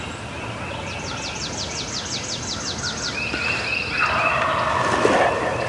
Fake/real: real